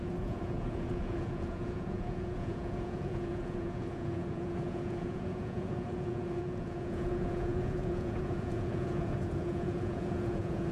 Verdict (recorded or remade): remade